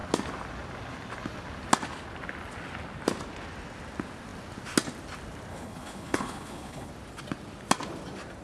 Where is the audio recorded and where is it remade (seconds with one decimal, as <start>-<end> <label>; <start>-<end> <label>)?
0.0-5.5 recorded; 5.5-6.9 remade; 6.9-8.4 recorded